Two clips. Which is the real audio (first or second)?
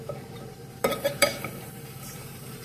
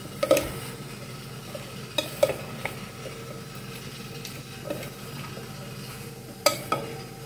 second